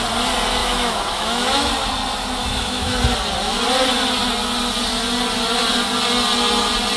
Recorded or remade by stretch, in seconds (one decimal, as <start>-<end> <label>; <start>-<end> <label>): 0.0-0.6 recorded; 0.6-1.7 remade; 1.7-2.4 recorded; 2.4-3.0 remade; 3.0-7.0 recorded